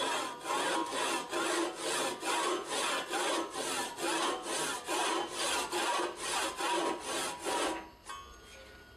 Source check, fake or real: real